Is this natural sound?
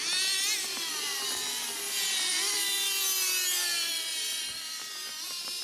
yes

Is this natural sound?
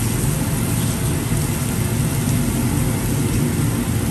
yes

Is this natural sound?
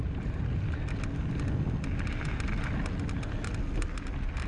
yes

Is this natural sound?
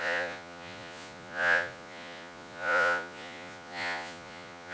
no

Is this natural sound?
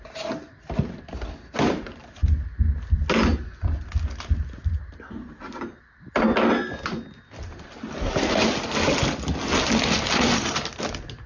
yes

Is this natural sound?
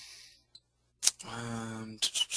yes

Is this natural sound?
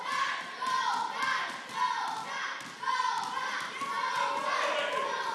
yes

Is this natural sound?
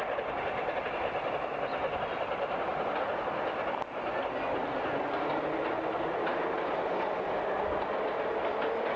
yes